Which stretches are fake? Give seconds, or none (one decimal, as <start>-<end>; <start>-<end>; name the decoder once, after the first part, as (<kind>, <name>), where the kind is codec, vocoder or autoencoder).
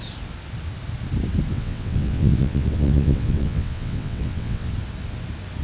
1.5-4.7 (vocoder, WaveNeXt)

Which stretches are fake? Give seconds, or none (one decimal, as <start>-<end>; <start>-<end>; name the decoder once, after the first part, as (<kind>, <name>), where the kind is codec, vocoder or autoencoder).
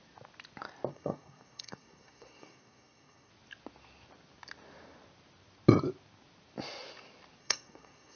0.9-3.3 (codec, SNAC); 7.4-8.2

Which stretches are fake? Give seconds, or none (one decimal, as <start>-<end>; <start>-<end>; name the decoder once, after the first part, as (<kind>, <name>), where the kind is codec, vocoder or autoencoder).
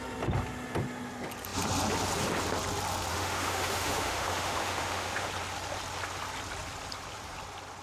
3.1-5.3 (autoencoder, DAC-VAE)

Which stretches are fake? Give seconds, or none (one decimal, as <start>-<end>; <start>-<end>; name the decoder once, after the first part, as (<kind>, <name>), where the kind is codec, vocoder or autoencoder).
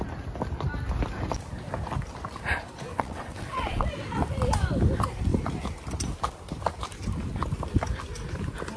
2.9-3.9 (vocoder, WaveNeXt)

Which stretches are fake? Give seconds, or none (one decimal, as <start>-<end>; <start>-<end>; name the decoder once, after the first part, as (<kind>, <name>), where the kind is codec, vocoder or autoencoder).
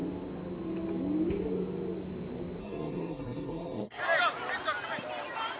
2.6-4.0 (codec, SNAC)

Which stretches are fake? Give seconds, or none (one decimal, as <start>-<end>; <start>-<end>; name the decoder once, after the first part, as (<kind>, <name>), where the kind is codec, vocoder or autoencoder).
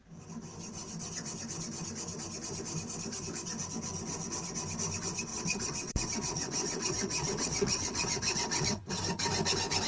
5.3-9.0 (vocoder, WaveNeXt)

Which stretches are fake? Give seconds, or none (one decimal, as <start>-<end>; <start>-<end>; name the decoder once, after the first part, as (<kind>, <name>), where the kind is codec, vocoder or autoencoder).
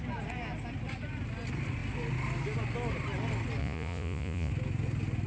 3.6-4.5 (vocoder, Vocos)